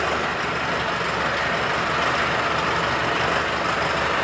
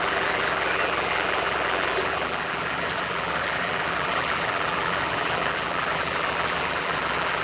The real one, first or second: first